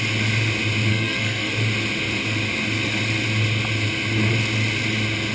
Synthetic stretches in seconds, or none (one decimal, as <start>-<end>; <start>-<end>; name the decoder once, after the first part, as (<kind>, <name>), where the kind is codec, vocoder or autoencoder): 0.9-1.5 (codec, SNAC)

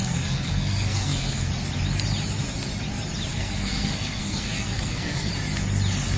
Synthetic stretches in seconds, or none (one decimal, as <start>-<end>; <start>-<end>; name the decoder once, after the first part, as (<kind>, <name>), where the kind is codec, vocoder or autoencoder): 0.0-1.5 (codec, SNAC); 3.3-5.3

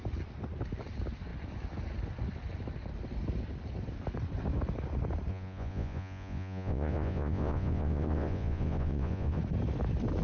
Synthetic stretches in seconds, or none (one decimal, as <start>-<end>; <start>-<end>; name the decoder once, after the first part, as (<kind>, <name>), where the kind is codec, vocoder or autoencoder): 5.3-9.4 (vocoder, Vocos)

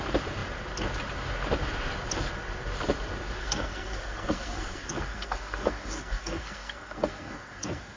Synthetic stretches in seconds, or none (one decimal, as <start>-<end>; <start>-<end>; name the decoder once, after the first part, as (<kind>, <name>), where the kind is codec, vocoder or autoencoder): 3.4-8.0 (codec, SNAC)

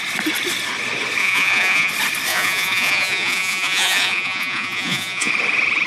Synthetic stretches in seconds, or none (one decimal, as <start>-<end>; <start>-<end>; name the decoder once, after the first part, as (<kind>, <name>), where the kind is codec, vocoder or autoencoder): 1.2-1.9 (vocoder, Vocos); 2.3-5.3

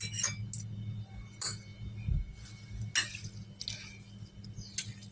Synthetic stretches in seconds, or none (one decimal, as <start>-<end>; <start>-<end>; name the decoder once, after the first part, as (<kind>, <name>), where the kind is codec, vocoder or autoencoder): none